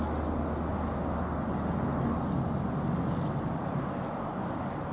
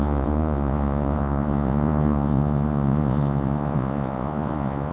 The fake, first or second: second